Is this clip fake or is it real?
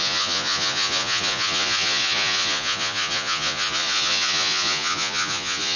fake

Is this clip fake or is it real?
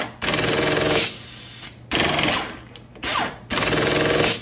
real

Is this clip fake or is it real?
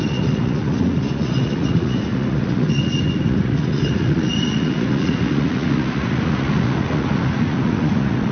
fake